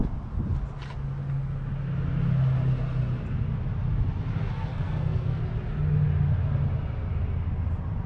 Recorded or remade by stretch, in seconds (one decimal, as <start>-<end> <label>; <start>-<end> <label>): 0.0-4.7 recorded; 4.7-5.4 remade; 5.4-8.1 recorded